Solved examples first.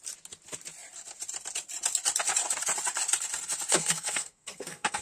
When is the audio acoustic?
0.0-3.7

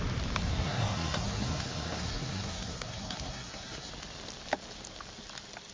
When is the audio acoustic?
0.0-0.5; 3.9-5.7

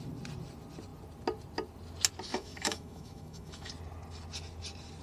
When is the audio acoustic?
0.0-2.3; 3.7-5.0

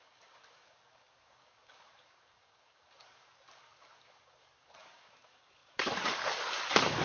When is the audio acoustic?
none

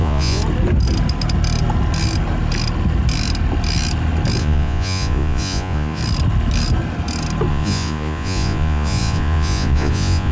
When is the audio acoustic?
0.4-4.4; 6.0-7.5